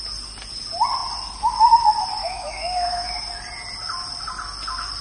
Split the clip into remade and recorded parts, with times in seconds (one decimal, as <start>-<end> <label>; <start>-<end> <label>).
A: 0.0-2.2 recorded; 2.2-3.1 remade; 3.1-5.0 recorded

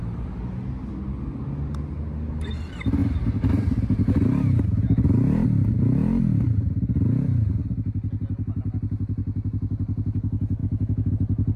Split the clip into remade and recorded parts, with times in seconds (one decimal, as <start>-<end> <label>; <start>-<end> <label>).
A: 0.0-10.6 recorded; 10.6-11.1 remade; 11.1-11.6 recorded

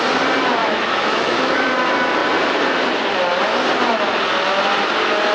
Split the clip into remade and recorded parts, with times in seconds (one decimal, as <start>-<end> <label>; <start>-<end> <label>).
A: 0.0-0.6 recorded; 0.6-1.7 remade; 1.7-5.3 recorded

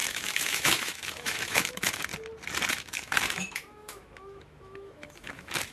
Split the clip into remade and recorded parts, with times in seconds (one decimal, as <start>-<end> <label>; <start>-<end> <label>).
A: 0.0-2.1 remade; 2.1-2.7 recorded; 2.7-5.7 remade

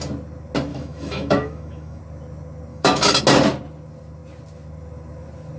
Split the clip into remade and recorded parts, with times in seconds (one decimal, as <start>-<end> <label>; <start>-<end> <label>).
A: 0.0-0.7 recorded; 0.7-2.0 remade; 2.0-2.7 recorded; 2.7-3.2 remade; 3.2-5.6 recorded

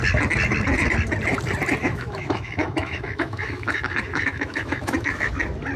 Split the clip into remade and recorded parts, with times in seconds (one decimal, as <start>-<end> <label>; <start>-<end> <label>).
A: 0.0-1.8 recorded; 1.8-5.3 remade; 5.3-5.8 recorded